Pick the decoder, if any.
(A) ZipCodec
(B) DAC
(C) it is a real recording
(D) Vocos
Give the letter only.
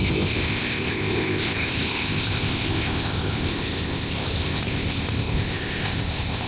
A